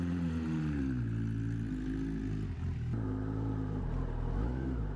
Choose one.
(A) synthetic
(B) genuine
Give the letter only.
B